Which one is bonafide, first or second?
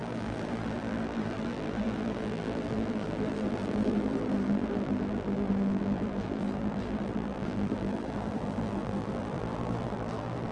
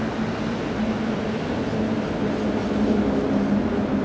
second